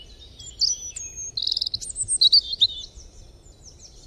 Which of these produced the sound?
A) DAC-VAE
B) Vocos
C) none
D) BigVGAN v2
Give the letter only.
C